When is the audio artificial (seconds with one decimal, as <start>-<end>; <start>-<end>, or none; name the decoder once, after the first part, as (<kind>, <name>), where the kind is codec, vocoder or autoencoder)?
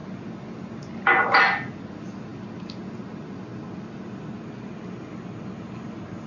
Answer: none